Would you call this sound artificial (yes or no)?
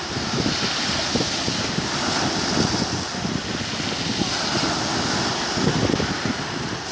no